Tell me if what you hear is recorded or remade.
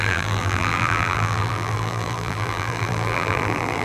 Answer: remade